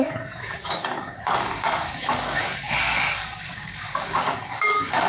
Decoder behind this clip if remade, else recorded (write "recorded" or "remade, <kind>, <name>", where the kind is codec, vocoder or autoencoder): remade, codec, DAC